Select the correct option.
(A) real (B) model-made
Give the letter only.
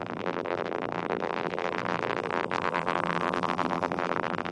B